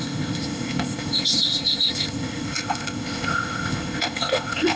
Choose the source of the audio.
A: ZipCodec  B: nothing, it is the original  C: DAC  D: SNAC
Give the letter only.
A